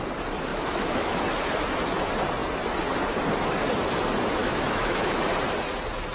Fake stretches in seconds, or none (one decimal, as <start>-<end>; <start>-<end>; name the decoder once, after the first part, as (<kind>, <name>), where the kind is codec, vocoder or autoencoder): 0.5-1.2 (autoencoder, DAC-VAE); 4.4-5.2